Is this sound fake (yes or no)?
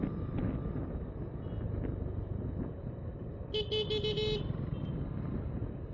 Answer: no